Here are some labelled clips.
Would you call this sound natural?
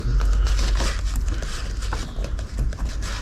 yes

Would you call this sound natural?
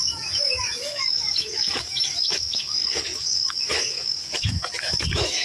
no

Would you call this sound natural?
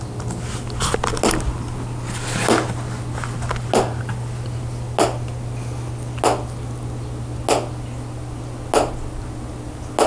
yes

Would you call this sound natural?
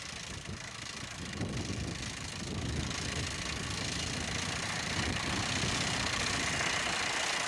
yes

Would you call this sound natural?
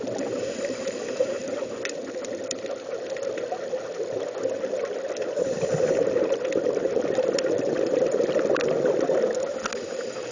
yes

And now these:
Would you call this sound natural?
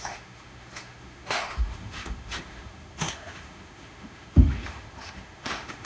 no